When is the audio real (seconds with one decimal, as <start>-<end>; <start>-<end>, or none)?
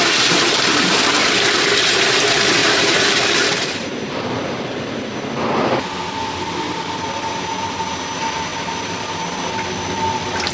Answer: 0.0-1.2; 1.7-2.6; 4.9-10.5